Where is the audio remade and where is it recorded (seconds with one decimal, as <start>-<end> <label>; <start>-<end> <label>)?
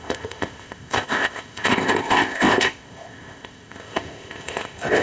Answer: 0.0-5.0 remade